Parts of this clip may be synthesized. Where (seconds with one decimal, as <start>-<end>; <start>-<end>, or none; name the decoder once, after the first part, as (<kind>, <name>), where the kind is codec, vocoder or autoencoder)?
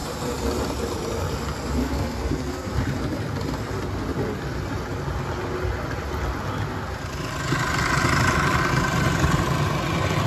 1.8-2.7 (codec, SNAC)